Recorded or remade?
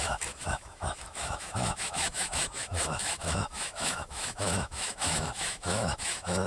remade